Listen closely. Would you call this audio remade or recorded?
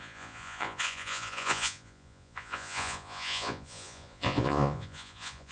remade